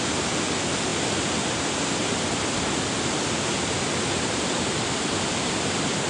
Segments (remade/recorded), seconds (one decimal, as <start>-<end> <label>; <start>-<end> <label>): 0.0-6.1 recorded